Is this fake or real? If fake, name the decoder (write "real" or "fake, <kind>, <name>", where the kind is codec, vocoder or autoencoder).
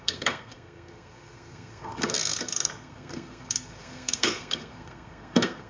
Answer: fake, codec, SNAC